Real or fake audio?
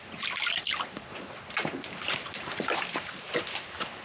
real